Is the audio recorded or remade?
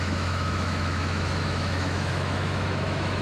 remade